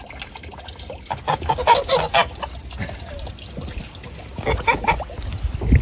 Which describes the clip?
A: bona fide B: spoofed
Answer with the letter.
A